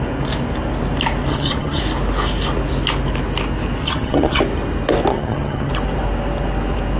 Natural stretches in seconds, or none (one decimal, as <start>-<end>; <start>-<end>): 0.0-1.3; 1.8-3.8; 4.4-5.1; 5.7-7.0